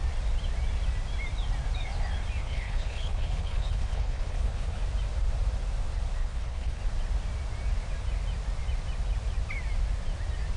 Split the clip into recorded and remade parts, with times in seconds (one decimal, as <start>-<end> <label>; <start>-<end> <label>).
0.0-2.4 recorded; 2.4-4.8 remade; 4.8-6.2 recorded; 6.2-6.8 remade; 6.8-10.6 recorded